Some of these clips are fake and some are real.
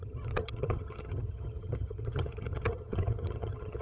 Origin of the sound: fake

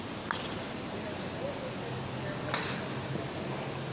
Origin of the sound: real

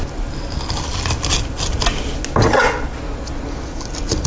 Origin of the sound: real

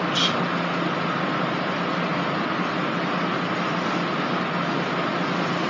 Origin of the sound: real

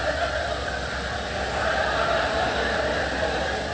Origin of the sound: real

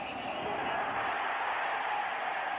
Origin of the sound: real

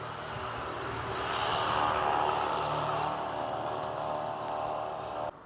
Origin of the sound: real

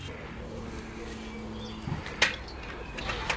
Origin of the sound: real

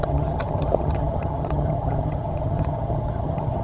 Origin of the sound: fake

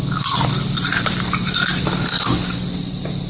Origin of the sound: real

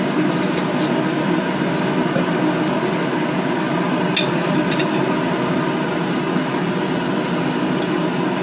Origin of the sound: real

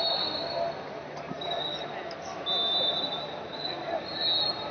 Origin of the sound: real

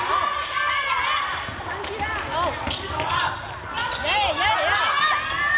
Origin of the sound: real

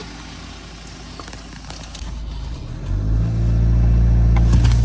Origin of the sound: real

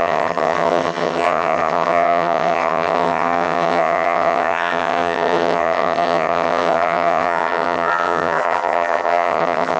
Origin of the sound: fake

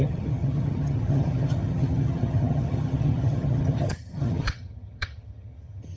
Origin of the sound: fake